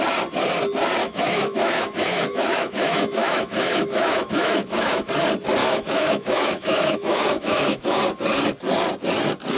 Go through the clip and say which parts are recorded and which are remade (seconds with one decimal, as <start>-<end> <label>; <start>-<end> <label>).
0.0-1.0 recorded; 1.0-5.1 remade; 5.1-5.6 recorded; 5.6-8.0 remade; 8.0-9.6 recorded